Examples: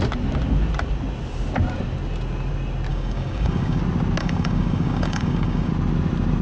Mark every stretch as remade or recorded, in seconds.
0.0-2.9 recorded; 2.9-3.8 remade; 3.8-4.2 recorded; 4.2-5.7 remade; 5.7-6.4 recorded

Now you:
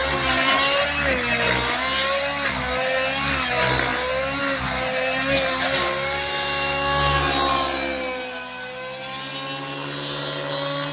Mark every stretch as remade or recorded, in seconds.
0.0-10.9 recorded

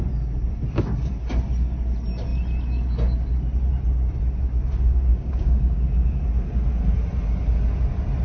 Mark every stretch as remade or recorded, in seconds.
0.0-5.1 recorded; 5.1-5.8 remade; 5.8-8.2 recorded

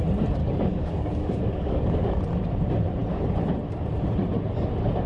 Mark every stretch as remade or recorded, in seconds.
0.0-0.4 recorded; 0.4-2.2 remade; 2.2-5.1 recorded

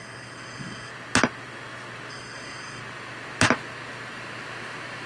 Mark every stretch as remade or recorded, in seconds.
0.0-0.9 remade; 0.9-2.1 recorded; 2.1-2.8 remade; 2.8-5.1 recorded

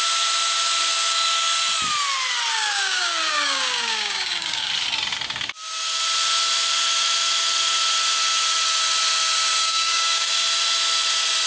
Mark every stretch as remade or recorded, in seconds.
0.0-2.5 recorded; 2.5-4.7 remade; 4.7-9.6 recorded; 9.6-10.3 remade; 10.3-11.5 recorded

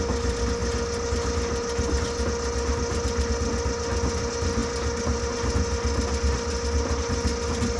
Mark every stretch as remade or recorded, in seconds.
0.0-7.8 recorded